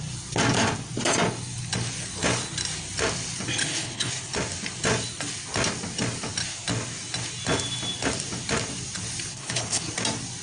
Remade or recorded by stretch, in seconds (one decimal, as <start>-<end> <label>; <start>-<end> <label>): 0.0-3.6 recorded; 3.6-4.1 remade; 4.1-9.3 recorded; 9.3-9.8 remade; 9.8-10.4 recorded